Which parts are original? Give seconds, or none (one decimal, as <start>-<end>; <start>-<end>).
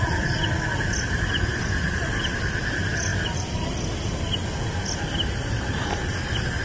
0.0-1.5; 2.2-3.1; 4.3-6.6